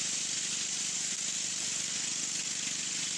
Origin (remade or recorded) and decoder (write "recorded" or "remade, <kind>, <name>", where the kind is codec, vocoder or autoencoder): remade, vocoder, Vocos